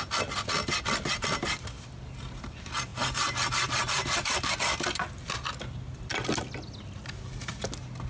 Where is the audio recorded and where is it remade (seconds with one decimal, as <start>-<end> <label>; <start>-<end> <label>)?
0.0-2.9 recorded; 2.9-4.5 remade; 4.5-8.1 recorded